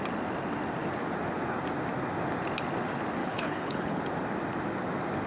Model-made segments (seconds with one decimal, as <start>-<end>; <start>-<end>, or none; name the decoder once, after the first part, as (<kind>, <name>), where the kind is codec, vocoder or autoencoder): 3.2-4.0 (codec, HILCodec)